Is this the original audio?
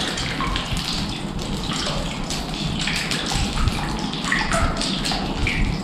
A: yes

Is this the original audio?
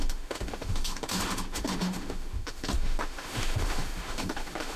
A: no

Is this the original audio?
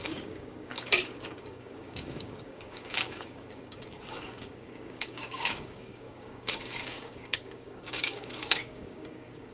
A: no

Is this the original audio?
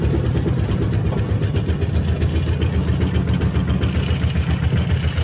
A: yes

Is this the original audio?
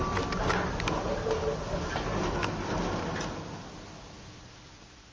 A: yes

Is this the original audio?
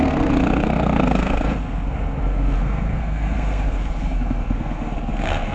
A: no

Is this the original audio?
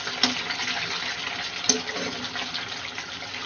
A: yes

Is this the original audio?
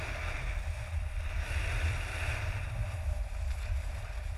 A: yes